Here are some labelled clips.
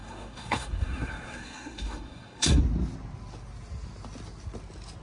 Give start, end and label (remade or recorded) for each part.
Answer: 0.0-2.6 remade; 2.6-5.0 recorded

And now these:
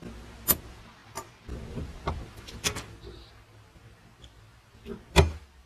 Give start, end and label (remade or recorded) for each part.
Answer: 0.0-5.7 recorded

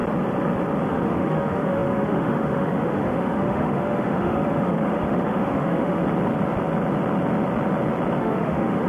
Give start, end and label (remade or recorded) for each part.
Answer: 0.0-0.8 recorded; 0.8-6.0 remade; 6.0-8.2 recorded; 8.2-8.9 remade